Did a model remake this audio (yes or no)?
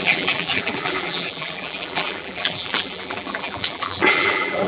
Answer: yes